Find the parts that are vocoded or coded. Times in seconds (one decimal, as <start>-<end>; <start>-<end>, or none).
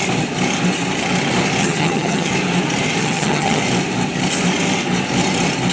1.6-2.3; 3.0-3.6